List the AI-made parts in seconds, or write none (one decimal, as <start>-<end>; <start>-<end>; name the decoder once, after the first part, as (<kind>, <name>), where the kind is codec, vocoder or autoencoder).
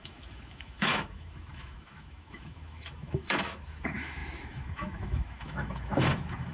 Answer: 0.0-6.5 (autoencoder, DAC-VAE)